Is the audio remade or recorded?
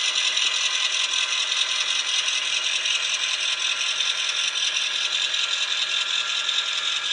recorded